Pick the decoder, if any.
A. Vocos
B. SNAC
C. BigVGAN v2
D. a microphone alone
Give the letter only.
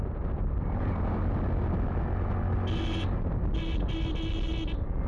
D